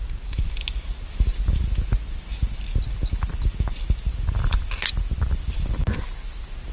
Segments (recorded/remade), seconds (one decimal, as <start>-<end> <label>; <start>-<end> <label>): 0.0-6.7 recorded